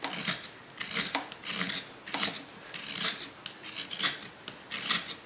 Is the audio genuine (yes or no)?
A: yes